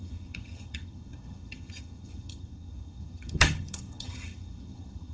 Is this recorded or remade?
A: remade